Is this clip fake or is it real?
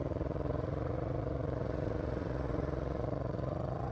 fake